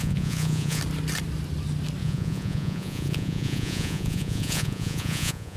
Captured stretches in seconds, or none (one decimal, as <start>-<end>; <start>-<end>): 0.8-2.0